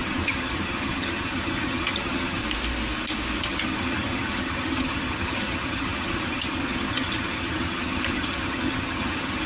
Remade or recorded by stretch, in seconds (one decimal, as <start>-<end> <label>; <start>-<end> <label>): 0.0-2.4 remade; 2.4-3.4 recorded; 3.4-9.5 remade